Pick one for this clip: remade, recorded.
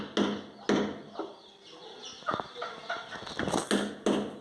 recorded